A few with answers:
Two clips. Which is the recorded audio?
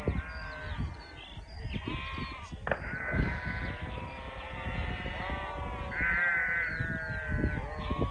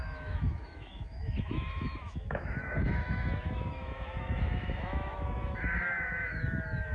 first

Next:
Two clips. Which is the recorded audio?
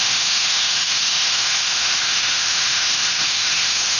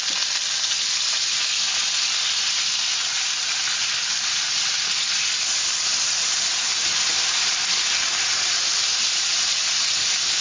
second